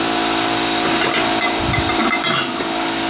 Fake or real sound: real